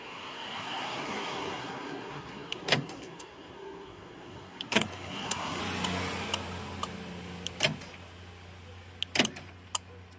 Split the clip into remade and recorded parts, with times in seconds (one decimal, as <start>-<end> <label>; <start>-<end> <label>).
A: 0.0-5.6 remade; 5.6-10.2 recorded